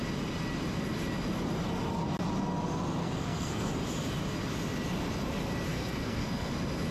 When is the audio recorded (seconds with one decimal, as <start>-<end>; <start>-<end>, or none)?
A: 0.0-3.0; 3.7-5.7; 6.5-6.9